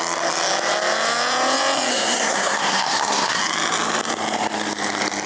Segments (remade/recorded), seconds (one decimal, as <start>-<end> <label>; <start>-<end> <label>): 0.0-1.9 recorded; 1.9-3.4 remade; 3.4-5.3 recorded